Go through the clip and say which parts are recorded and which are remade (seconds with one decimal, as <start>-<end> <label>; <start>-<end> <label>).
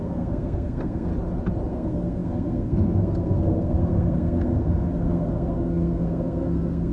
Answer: 0.0-1.1 remade; 1.1-1.7 recorded; 1.7-6.9 remade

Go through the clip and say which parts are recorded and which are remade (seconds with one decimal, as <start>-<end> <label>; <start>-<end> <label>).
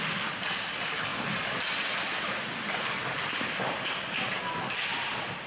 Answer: 0.0-5.5 recorded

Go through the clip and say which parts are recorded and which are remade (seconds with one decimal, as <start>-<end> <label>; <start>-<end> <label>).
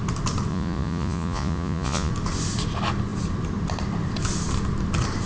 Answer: 0.0-0.5 recorded; 0.5-2.1 remade; 2.1-5.3 recorded